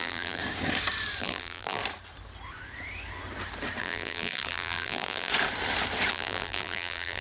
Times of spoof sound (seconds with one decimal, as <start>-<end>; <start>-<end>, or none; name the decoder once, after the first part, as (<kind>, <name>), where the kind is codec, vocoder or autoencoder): 0.0-0.4 (vocoder, BigVGAN v2); 1.2-1.8; 3.8-5.3; 6.1-7.2